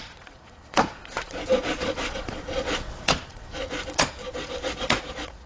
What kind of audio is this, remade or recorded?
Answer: remade